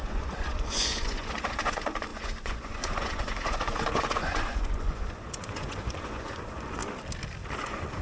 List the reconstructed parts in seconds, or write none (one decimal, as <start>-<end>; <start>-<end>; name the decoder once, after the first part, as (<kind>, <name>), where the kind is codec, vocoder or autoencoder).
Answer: 0.0-6.8 (vocoder, Vocos); 7.6-8.0